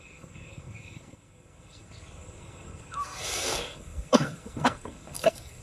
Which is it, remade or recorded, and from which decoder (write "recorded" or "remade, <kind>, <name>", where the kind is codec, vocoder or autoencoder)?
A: remade, codec, SNAC